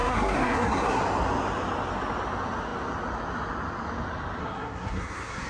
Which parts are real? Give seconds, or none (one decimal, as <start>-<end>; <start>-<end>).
1.0-4.4